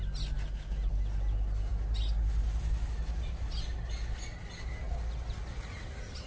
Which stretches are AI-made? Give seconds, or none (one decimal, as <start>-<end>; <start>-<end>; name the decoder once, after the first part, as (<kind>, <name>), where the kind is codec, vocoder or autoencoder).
none